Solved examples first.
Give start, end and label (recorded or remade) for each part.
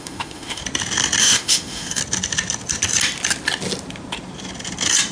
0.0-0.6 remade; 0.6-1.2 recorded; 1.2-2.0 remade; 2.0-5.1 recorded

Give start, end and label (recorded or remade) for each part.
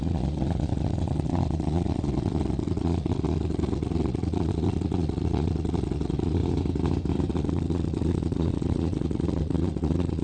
0.0-6.4 remade; 6.4-7.3 recorded; 7.3-10.2 remade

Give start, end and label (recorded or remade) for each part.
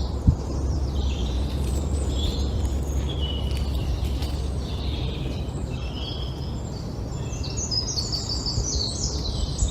0.0-1.2 recorded; 1.2-2.3 remade; 2.3-9.7 recorded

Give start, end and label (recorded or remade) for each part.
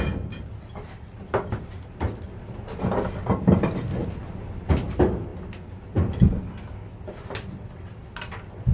0.0-8.7 recorded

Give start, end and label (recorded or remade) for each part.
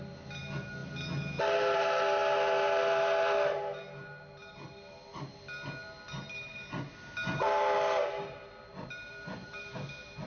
0.0-10.3 recorded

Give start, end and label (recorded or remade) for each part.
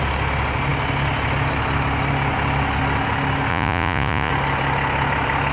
0.0-3.5 recorded; 3.5-4.3 remade; 4.3-5.5 recorded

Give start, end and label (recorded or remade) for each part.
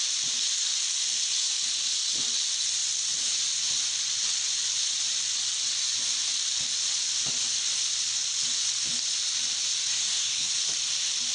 0.0-9.9 recorded; 9.9-10.5 remade; 10.5-11.3 recorded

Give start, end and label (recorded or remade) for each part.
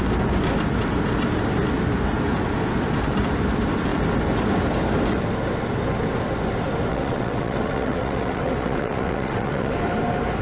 0.0-6.9 recorded; 6.9-9.7 remade; 9.7-10.4 recorded